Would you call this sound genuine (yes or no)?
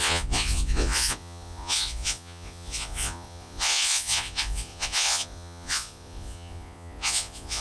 no